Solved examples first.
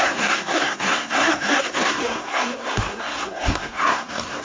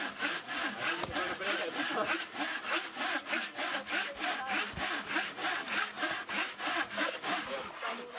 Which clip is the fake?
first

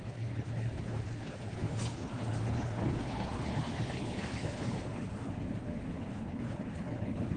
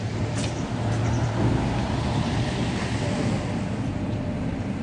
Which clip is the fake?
first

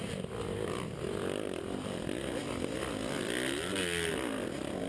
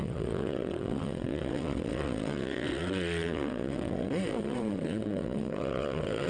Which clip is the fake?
second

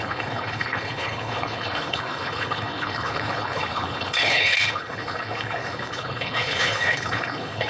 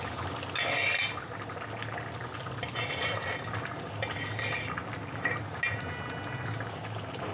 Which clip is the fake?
first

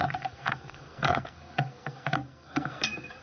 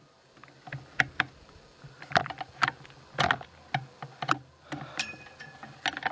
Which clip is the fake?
first